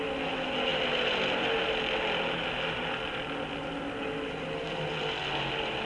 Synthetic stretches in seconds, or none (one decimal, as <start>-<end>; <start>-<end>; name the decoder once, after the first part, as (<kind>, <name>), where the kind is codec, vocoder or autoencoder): none